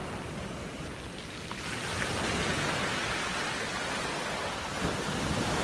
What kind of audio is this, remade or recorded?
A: recorded